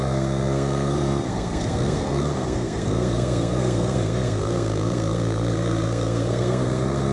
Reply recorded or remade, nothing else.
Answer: remade